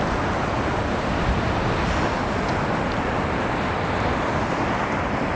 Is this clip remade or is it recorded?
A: recorded